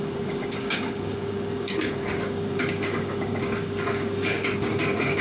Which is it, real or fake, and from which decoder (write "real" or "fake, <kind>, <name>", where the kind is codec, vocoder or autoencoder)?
fake, codec, DAC